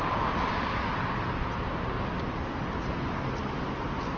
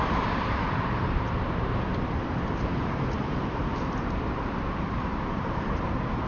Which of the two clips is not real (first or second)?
second